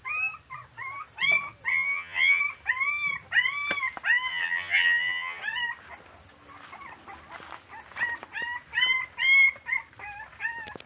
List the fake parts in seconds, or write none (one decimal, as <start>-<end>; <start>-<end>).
1.7-2.4; 4.3-5.4